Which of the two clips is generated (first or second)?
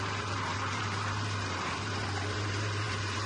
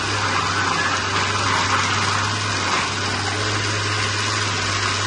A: first